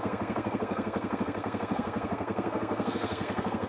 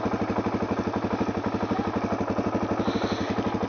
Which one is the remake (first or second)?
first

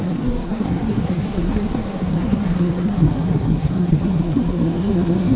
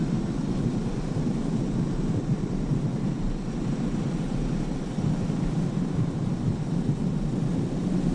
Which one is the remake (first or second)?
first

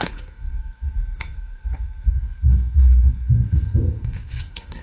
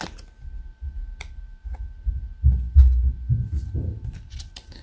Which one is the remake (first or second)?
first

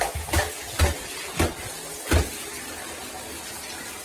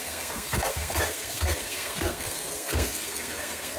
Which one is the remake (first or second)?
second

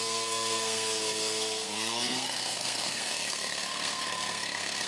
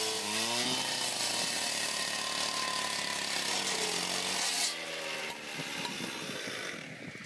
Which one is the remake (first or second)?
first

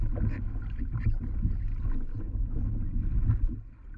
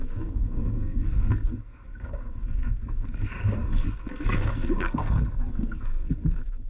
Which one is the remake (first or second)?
second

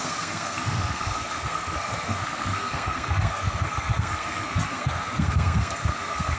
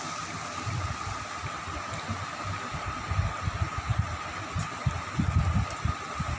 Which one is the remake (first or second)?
first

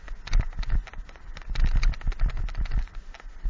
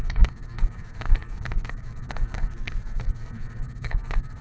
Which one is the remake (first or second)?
second